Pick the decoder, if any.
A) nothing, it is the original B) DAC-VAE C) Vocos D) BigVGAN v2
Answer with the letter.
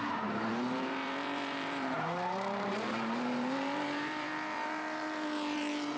D